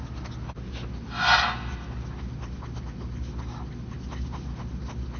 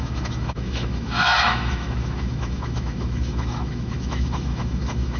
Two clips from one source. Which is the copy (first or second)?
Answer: second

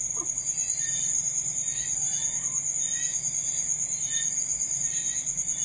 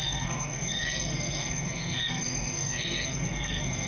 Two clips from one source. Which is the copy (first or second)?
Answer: second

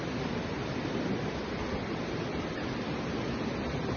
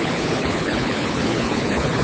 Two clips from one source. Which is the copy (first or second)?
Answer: second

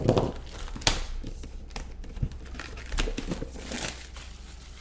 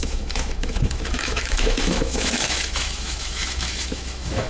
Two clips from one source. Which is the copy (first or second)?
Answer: second